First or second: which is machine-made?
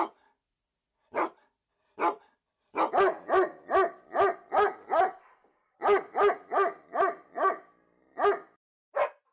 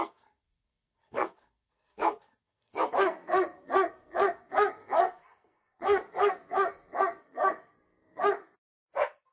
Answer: second